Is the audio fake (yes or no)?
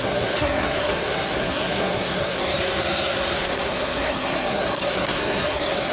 yes